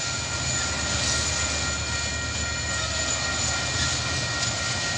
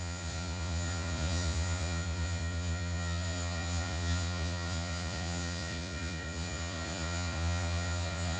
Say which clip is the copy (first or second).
second